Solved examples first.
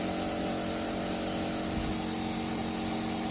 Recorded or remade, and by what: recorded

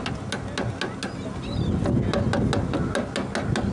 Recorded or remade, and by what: recorded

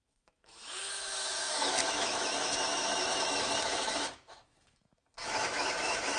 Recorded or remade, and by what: remade, autoencoder, DAC-VAE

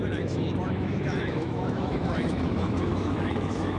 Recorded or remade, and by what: remade, autoencoder, DAC-VAE